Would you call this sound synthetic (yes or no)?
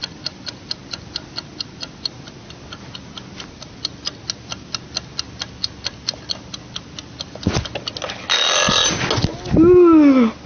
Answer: no